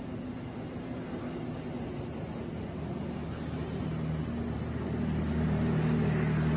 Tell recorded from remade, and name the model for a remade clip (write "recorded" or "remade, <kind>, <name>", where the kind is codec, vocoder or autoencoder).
recorded